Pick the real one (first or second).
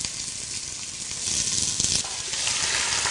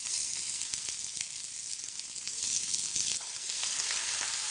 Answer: first